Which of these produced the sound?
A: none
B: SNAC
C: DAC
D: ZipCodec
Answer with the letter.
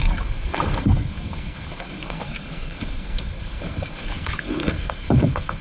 B